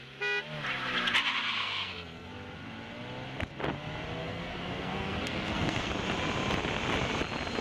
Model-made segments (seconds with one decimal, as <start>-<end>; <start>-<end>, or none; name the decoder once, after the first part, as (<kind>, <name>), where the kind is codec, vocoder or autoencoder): 1.6-2.3 (codec, SNAC); 4.2-5.9